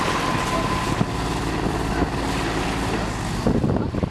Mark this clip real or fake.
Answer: real